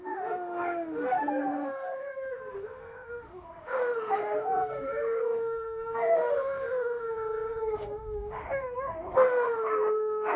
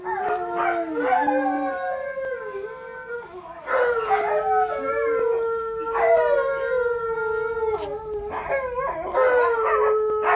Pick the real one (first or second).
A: second